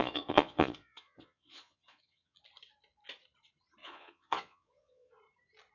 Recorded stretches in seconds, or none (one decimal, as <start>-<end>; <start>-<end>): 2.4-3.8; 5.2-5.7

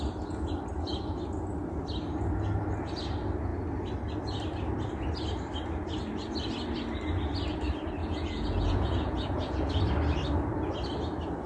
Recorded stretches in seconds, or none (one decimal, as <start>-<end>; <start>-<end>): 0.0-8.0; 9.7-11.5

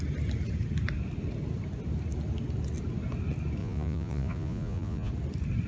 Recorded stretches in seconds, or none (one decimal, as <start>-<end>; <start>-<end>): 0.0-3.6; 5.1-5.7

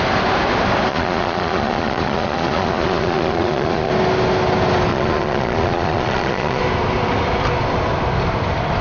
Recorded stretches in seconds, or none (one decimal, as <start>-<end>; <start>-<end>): 0.0-0.9; 3.9-4.9; 6.6-8.8